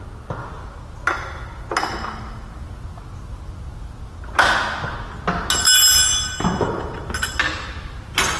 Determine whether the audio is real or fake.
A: real